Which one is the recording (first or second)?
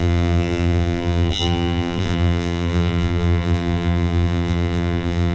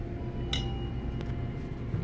second